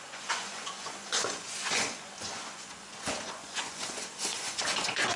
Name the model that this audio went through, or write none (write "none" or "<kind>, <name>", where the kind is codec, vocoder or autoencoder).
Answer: vocoder, Vocos